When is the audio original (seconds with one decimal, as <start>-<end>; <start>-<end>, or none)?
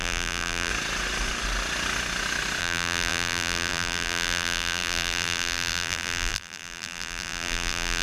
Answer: 0.7-2.6